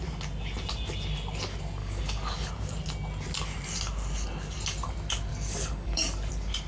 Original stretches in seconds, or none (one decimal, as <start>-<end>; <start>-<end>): 0.0-1.8; 2.5-5.3; 6.3-6.7

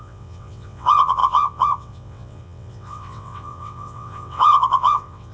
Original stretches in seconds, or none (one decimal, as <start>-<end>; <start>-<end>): none